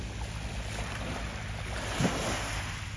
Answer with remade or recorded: recorded